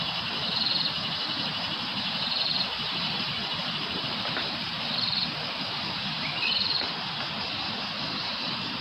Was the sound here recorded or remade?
remade